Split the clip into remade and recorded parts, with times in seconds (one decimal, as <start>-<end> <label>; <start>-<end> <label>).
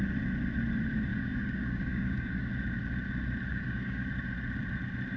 0.0-1.1 recorded; 1.1-2.5 remade; 2.5-3.5 recorded; 3.5-4.1 remade; 4.1-5.2 recorded